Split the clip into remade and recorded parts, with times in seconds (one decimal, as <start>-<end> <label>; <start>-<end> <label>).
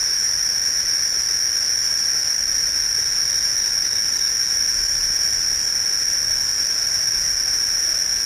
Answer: 0.0-8.3 recorded